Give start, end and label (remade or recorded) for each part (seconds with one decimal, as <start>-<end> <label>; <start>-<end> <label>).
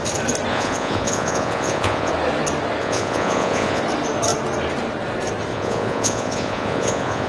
0.0-0.5 recorded; 0.5-2.1 remade; 2.1-2.8 recorded; 2.8-3.8 remade; 3.8-5.5 recorded; 5.5-7.3 remade